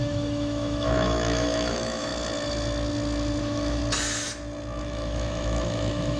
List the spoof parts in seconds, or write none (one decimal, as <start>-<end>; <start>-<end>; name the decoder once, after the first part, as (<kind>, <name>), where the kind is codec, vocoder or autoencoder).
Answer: 0.0-2.1 (autoencoder, DAC-VAE); 3.4-3.8; 4.8-6.2